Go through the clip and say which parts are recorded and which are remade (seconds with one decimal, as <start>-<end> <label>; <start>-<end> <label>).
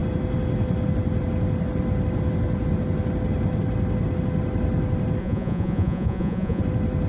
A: 0.0-5.2 recorded; 5.2-6.6 remade; 6.6-7.1 recorded